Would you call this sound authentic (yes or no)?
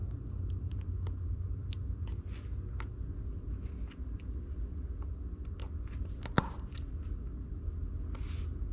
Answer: yes